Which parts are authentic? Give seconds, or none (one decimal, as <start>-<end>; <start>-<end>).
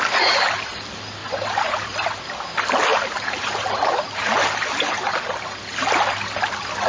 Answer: 0.0-1.2; 2.3-2.9; 4.7-6.9